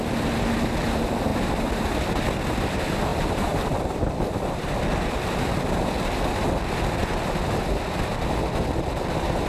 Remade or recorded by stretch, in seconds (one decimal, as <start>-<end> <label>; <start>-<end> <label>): 0.0-3.1 recorded; 3.1-4.7 remade; 4.7-7.0 recorded; 7.0-8.1 remade; 8.1-9.5 recorded